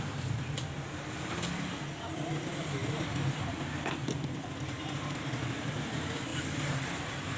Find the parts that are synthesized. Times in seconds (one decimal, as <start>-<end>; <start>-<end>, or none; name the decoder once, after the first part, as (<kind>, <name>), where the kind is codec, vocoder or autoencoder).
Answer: none